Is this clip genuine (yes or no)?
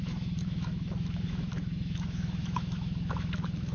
no